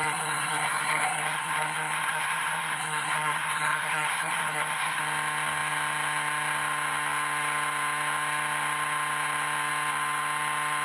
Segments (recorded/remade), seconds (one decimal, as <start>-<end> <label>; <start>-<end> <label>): 0.0-5.0 remade; 5.0-10.8 recorded